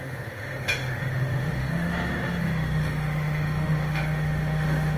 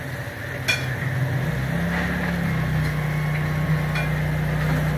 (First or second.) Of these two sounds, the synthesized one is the first